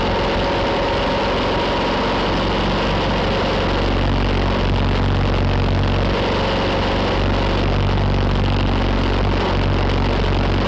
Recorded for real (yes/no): yes